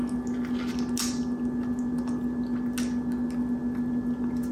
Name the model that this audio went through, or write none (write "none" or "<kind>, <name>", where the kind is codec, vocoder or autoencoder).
none